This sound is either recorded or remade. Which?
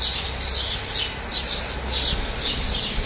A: recorded